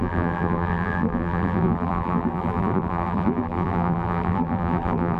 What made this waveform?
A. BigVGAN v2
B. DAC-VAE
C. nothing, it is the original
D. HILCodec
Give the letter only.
A